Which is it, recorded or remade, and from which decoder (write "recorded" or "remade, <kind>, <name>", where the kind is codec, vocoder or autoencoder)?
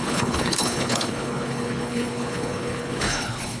remade, codec, HILCodec